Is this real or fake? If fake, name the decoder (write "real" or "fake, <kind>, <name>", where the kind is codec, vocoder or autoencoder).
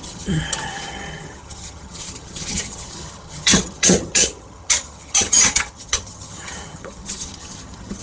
fake, vocoder, HiFi-GAN